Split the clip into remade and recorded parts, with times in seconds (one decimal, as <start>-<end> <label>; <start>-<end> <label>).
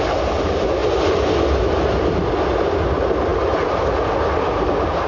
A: 0.0-5.1 recorded